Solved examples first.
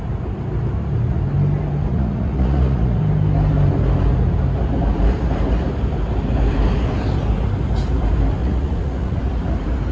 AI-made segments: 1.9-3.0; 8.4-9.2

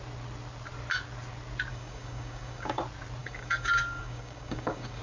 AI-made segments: 1.7-2.8; 3.2-5.0

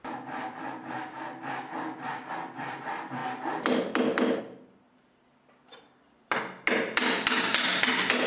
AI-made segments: none

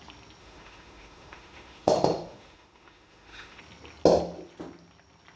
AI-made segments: 0.4-3.6